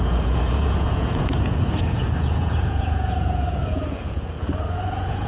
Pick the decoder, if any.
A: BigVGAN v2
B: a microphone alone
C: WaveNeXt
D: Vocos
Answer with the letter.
D